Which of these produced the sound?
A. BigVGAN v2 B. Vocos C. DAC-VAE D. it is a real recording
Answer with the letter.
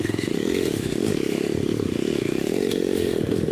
C